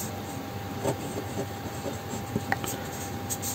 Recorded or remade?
recorded